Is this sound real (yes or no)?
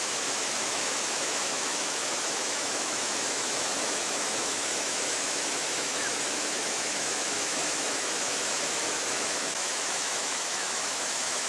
no